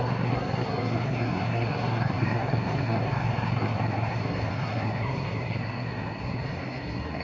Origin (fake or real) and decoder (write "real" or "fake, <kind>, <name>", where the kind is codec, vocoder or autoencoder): fake, codec, SNAC